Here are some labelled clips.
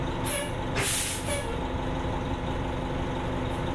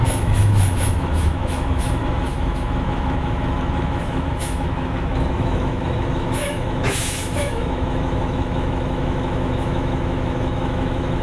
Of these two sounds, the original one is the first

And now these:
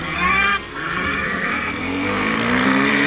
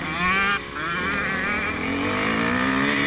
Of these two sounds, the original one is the second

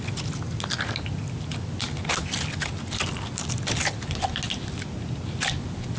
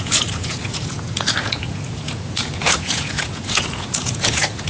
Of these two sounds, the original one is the first